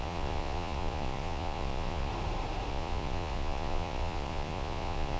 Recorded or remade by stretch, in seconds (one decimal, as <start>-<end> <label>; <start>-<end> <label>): 0.0-2.1 remade; 2.1-2.7 recorded; 2.7-5.2 remade